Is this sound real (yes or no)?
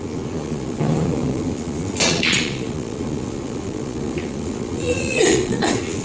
no